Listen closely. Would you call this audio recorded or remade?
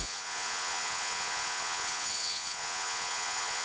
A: remade